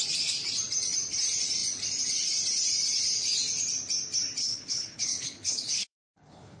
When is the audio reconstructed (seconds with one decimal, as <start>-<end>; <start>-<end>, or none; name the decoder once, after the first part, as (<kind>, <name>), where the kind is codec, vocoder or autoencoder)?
4.4-6.6 (codec, HILCodec)